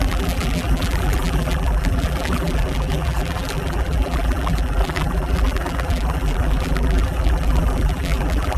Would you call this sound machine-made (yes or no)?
yes